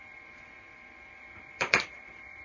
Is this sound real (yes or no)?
no